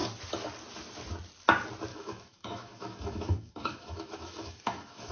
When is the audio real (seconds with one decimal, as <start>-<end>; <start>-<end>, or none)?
0.0-1.9